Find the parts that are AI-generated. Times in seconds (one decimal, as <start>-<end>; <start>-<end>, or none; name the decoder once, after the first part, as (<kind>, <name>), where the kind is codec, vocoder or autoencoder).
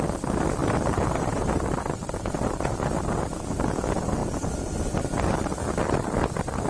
0.6-2.7 (vocoder, BigVGAN v2)